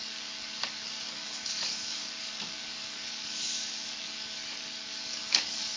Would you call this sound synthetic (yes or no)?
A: yes